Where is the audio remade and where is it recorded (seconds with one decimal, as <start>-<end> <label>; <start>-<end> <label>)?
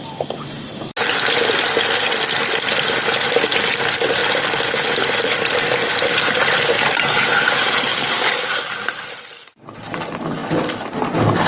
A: 0.0-7.9 recorded; 7.9-8.6 remade; 8.6-11.5 recorded